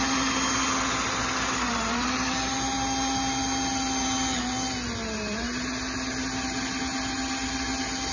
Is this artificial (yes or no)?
no